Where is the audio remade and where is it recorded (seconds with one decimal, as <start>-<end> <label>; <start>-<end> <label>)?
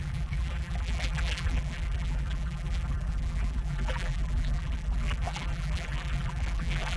0.0-7.0 remade